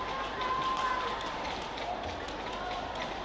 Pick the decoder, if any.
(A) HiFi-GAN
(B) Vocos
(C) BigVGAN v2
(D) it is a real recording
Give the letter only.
D